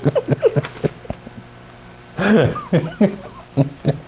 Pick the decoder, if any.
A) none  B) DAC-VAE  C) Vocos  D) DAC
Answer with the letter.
A